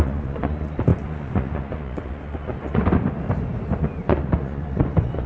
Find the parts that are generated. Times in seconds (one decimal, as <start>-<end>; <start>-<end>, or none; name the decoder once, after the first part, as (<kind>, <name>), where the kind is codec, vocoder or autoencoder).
0.0-2.8 (vocoder, Vocos); 3.8-5.3